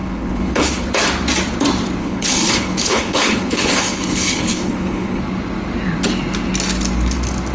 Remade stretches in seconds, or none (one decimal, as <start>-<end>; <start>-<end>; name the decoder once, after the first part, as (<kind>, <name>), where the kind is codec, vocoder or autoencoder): 0.0-0.9 (codec, HILCodec); 2.0-5.2

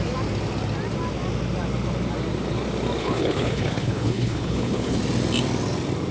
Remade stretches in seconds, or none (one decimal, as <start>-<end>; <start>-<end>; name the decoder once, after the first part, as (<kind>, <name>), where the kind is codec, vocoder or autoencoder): 3.0-5.0 (codec, HILCodec)

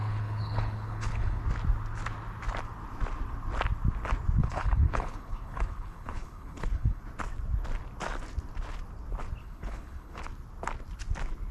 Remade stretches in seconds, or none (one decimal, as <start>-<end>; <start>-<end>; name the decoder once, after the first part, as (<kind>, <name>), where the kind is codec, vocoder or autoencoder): 0.0-1.4 (codec, HILCodec); 4.4-7.0; 9.4-10.2

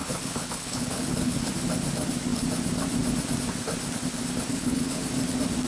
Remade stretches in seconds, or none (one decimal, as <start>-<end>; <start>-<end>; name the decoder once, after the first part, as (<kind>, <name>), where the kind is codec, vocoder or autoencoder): 0.0-1.5 (codec, HILCodec); 4.5-5.0

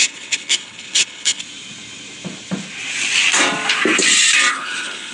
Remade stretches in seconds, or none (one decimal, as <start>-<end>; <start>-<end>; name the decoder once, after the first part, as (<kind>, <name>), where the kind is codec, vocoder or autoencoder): 0.0-1.4 (codec, HILCodec); 4.5-5.1

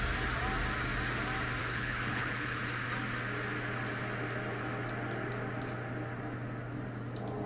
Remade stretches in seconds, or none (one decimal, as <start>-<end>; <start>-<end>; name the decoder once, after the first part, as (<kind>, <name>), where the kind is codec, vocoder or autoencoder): 1.6-2.6 (codec, HILCodec)

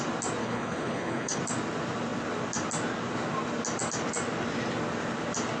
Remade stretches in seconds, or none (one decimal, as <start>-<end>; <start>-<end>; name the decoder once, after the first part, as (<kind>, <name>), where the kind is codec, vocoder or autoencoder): 0.4-1.4 (codec, HILCodec)